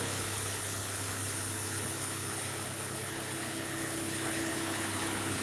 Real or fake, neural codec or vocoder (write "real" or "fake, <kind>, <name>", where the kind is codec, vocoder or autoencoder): fake, codec, HILCodec